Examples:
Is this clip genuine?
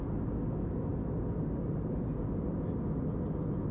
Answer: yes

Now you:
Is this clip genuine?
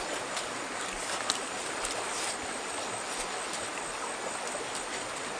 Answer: yes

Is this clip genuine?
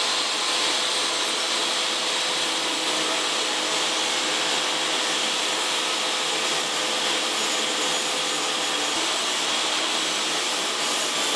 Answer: yes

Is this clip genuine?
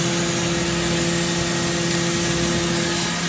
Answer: yes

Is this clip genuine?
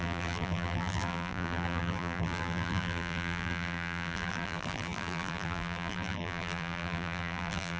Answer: no